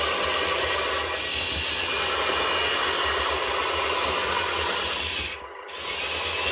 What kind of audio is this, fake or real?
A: real